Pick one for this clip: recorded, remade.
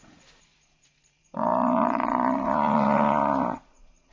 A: remade